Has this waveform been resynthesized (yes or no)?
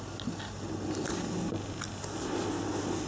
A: no